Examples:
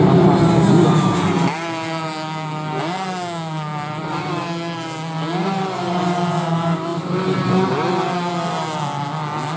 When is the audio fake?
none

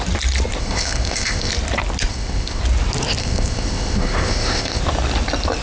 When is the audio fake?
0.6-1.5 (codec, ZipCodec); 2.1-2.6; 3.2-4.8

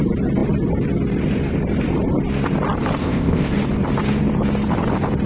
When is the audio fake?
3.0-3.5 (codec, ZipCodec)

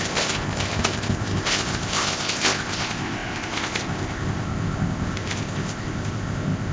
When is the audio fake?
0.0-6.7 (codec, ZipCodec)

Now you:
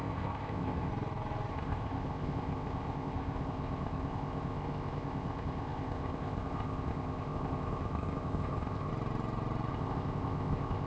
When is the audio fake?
0.0-0.9 (codec, ZipCodec); 1.5-8.9; 9.7-10.9

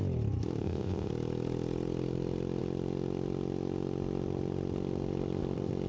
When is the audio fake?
0.6-1.1 (codec, ZipCodec)